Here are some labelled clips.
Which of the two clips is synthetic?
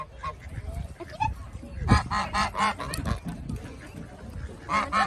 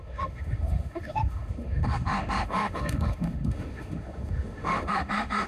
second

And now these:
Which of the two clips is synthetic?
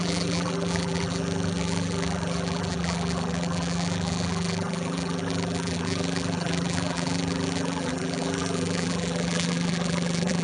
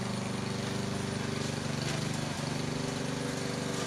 first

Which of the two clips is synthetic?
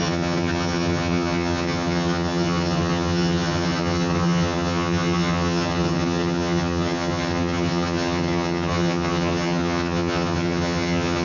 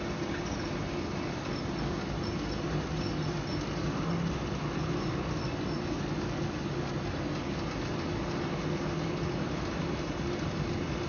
first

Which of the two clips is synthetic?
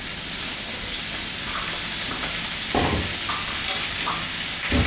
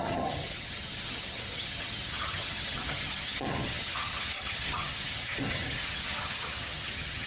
second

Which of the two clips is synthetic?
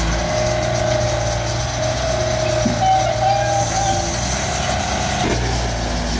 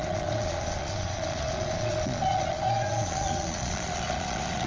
second